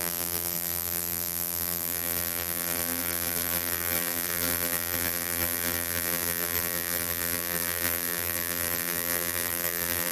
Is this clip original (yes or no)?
no